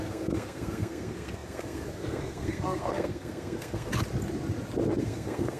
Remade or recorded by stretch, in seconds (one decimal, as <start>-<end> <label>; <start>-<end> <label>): 0.0-3.9 remade; 3.9-5.0 recorded; 5.0-5.6 remade